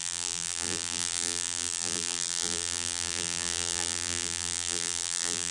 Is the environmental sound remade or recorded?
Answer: remade